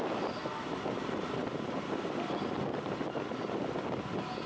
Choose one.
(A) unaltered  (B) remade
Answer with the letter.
A